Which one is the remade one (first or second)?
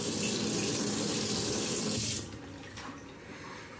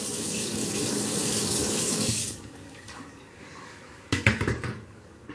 second